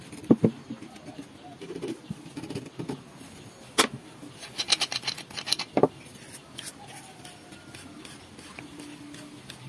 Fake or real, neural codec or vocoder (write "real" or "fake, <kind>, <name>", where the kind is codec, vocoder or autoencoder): real